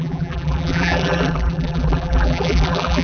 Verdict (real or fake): fake